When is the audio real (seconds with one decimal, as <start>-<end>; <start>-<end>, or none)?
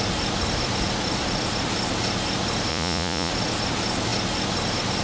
0.0-2.7; 3.3-5.0